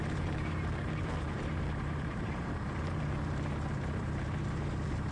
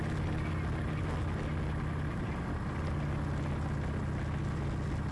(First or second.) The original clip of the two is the second